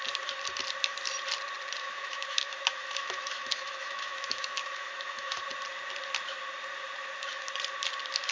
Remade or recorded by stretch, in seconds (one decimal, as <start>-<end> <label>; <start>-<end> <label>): 0.0-1.8 recorded; 1.8-5.4 remade; 5.4-8.3 recorded